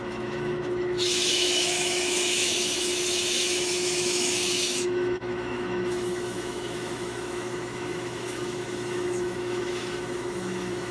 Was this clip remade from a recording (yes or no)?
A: yes